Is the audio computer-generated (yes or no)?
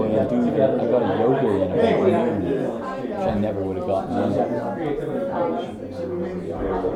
no